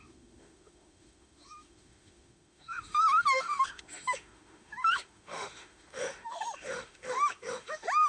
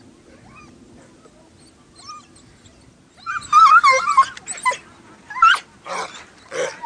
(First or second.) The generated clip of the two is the first